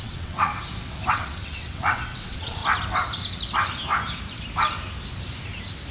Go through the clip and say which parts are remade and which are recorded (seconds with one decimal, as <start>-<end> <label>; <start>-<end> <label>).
0.0-0.5 remade; 0.5-1.1 recorded; 1.1-2.6 remade; 2.6-5.9 recorded